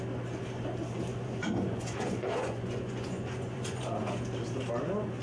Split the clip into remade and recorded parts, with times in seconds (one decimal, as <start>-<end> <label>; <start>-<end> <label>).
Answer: 0.0-1.1 recorded; 1.1-4.2 remade; 4.2-5.2 recorded